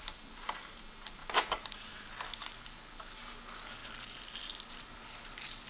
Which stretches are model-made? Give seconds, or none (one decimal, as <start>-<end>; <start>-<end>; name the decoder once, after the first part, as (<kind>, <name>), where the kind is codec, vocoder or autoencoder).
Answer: 1.2-2.2 (vocoder, BigVGAN v2); 3.8-5.2